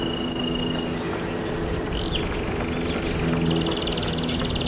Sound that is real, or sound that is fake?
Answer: real